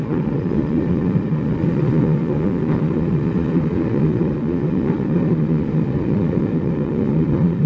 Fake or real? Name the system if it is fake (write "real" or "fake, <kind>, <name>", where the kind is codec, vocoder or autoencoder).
fake, vocoder, Vocos